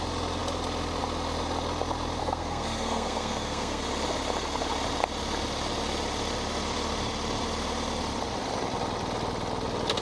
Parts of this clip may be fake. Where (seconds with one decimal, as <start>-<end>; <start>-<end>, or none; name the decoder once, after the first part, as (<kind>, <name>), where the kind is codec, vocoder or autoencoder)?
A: 2.2-3.8 (codec, SNAC)